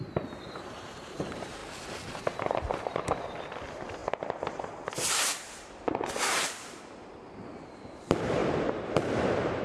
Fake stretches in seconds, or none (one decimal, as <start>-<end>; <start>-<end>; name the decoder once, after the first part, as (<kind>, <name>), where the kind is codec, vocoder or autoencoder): 0.0-1.6 (vocoder, BigVGAN v2); 2.5-9.6

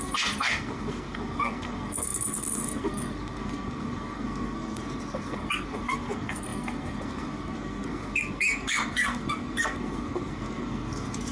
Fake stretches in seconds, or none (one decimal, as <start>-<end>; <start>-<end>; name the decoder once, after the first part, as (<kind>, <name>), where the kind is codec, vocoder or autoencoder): 0.0-11.3 (codec, SNAC)

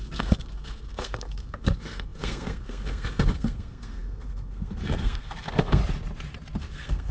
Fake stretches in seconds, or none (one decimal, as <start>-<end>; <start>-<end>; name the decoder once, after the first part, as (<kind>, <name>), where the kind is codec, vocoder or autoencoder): 0.0-5.8 (codec, SNAC); 6.6-7.1

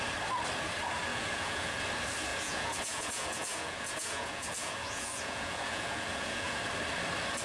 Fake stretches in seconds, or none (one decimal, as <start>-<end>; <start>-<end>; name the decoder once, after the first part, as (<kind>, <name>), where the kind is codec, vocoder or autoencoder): 1.1-1.9 (vocoder, Vocos); 2.3-6.6

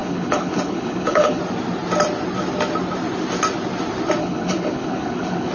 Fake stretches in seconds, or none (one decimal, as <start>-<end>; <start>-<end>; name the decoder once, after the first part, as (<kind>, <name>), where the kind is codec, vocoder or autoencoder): 0.0-1.4 (codec, HILCodec); 4.2-5.5

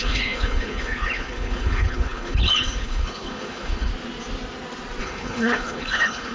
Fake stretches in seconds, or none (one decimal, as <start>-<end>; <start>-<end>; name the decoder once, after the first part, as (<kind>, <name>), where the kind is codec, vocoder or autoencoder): 0.0-3.9 (codec, HILCodec); 5.0-6.3